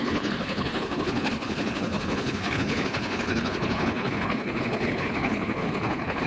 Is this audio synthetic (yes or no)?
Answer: yes